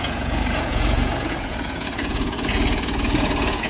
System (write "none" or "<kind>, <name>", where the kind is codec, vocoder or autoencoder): vocoder, Vocos